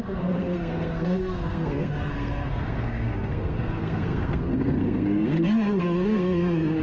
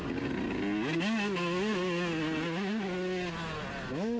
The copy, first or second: first